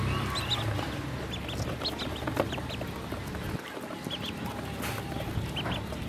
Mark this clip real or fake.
real